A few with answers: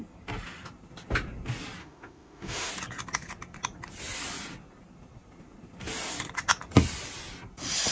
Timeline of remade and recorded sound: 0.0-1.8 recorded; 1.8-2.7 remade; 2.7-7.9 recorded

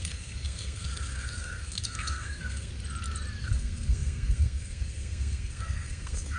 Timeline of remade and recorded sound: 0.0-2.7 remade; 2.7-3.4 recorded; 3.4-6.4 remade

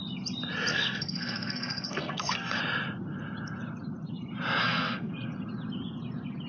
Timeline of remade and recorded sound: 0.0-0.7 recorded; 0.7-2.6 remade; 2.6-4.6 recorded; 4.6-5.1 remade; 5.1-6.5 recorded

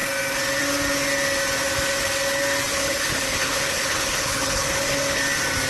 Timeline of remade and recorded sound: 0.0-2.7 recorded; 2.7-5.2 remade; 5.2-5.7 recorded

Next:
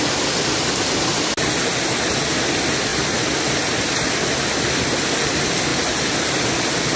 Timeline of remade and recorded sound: 0.0-5.7 recorded; 5.7-6.5 remade; 6.5-7.0 recorded